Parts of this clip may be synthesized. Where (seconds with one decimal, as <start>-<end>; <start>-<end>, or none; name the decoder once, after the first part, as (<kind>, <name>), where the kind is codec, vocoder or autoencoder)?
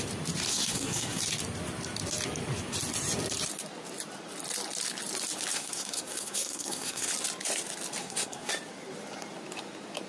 0.5-1.2 (codec, SNAC); 5.5-7.1; 8.0-8.5